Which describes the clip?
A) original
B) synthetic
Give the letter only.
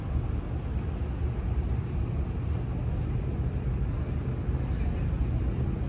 A